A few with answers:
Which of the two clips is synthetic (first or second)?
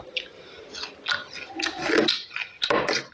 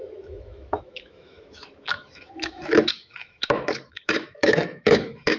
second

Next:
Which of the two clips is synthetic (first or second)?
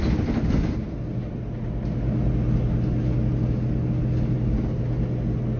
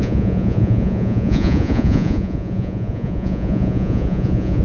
second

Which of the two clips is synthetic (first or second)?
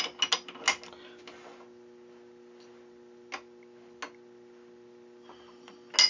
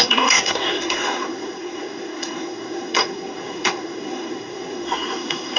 second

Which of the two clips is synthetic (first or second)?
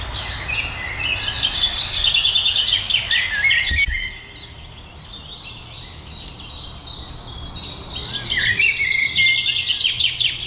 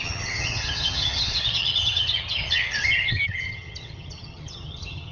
second